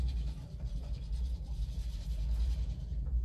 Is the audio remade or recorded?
remade